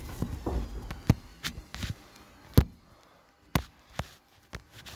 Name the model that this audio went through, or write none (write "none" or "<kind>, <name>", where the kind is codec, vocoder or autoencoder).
none